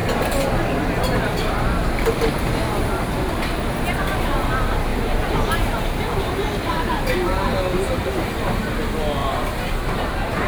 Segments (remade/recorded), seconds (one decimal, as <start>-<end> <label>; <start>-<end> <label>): 0.0-2.3 remade; 2.3-4.9 recorded; 4.9-6.6 remade; 6.6-8.0 recorded; 8.0-8.6 remade; 8.6-9.2 recorded; 9.2-9.7 remade; 9.7-10.5 recorded